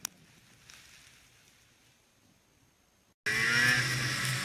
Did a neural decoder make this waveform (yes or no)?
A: no